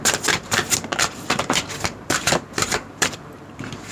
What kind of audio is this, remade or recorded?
remade